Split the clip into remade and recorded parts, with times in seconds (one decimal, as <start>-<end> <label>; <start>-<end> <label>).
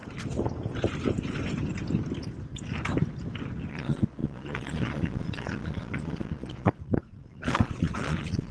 0.0-3.7 recorded; 3.7-8.5 remade